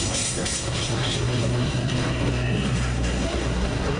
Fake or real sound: fake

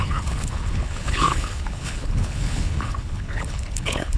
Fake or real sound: fake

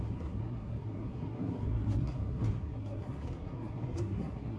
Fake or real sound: fake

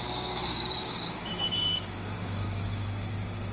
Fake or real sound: fake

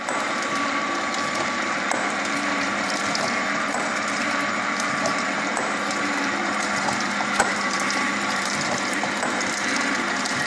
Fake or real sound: fake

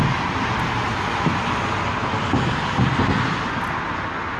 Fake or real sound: real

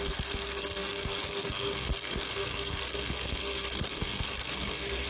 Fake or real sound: fake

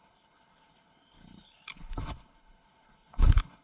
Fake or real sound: fake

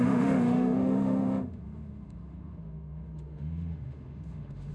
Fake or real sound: fake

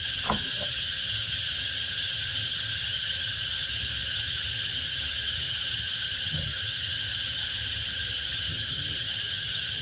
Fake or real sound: fake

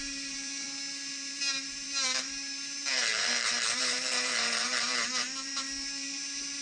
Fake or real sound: fake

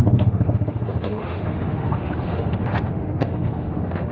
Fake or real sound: fake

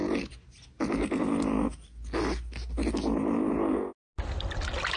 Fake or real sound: real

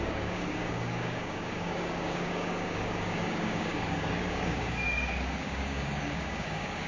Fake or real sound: fake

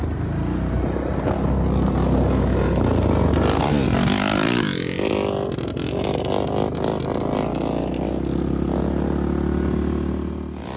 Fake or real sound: real